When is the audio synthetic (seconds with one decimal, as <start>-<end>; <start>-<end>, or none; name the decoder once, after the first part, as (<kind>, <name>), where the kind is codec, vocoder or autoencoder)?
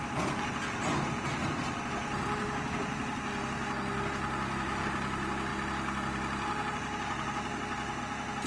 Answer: none